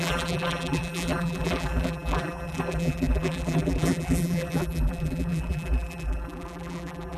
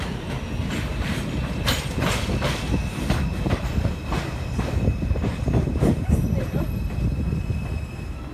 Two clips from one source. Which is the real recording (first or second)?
second